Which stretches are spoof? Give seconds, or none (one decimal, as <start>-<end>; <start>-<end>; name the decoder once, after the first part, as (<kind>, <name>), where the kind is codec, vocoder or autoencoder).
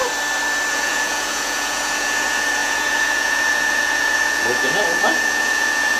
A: 0.7-6.0 (vocoder, Vocos)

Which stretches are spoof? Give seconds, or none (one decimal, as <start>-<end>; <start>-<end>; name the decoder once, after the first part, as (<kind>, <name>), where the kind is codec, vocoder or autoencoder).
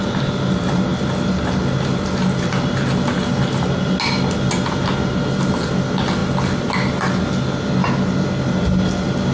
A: none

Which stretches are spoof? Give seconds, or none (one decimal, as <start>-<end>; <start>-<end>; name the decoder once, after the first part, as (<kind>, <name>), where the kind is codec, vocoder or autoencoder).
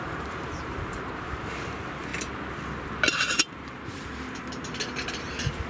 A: 0.0-2.1 (vocoder, BigVGAN v2); 5.1-5.7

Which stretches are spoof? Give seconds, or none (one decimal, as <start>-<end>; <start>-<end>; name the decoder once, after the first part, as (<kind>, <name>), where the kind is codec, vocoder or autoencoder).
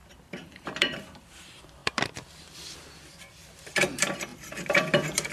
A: 0.5-5.3 (vocoder, BigVGAN v2)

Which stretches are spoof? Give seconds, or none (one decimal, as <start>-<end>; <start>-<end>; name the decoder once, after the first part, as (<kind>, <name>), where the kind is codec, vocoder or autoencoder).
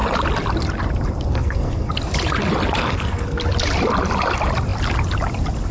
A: 1.3-1.9 (codec, SNAC); 2.8-3.4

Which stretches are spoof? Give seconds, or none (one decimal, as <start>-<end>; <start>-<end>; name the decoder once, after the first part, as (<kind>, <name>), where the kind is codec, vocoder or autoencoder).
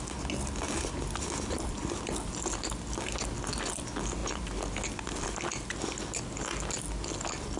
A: none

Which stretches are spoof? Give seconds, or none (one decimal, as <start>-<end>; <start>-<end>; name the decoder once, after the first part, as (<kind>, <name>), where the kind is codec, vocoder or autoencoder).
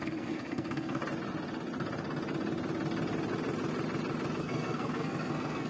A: 0.0-1.0 (codec, SNAC); 4.4-5.7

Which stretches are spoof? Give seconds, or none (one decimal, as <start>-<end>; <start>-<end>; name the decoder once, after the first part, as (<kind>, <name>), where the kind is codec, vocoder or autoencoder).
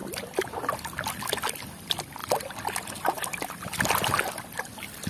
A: none